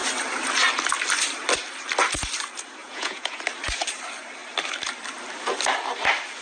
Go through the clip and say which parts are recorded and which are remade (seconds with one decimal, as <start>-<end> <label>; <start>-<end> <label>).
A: 0.0-2.8 recorded; 2.8-3.4 remade; 3.4-6.4 recorded